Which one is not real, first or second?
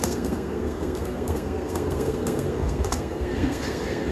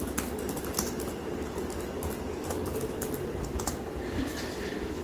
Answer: first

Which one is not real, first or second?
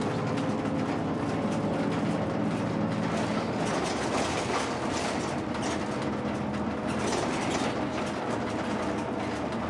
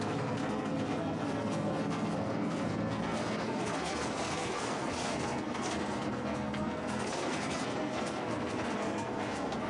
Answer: second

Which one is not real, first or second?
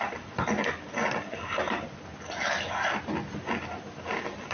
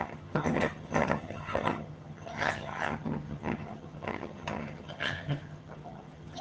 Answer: second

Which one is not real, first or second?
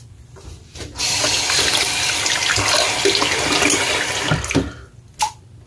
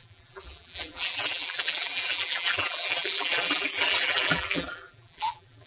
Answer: second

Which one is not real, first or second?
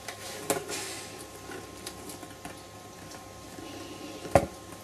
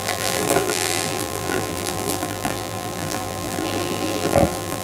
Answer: second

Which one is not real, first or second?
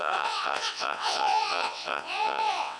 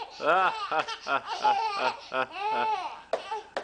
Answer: first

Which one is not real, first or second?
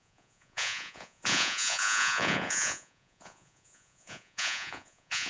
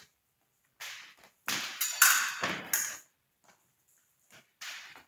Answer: first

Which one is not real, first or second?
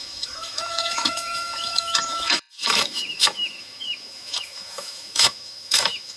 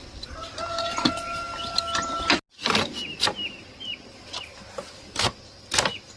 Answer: first